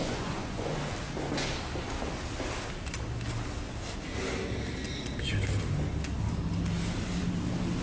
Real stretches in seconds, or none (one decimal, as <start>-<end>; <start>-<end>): 0.8-7.8

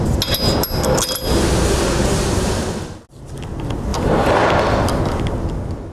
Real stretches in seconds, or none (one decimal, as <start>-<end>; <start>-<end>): 0.0-3.9; 4.6-5.9

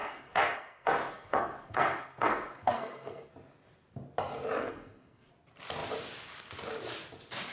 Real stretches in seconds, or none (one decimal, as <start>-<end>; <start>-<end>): 3.3-4.6; 5.3-7.5

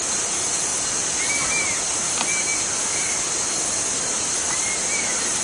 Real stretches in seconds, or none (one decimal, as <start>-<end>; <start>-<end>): 0.7-1.4; 2.5-3.9

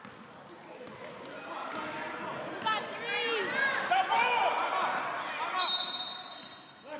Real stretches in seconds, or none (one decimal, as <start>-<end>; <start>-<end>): 0.0-2.3; 4.6-7.0

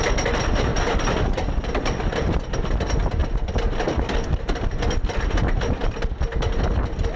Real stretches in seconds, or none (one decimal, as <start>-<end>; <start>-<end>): 0.0-7.2